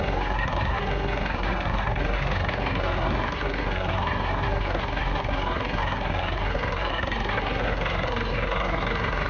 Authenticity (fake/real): fake